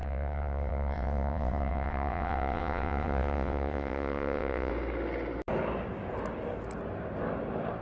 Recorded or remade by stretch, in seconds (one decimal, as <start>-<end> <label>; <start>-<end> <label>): 0.0-4.7 remade; 4.7-7.8 recorded